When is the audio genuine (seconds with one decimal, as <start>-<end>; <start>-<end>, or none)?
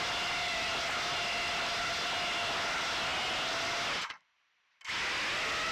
0.0-5.7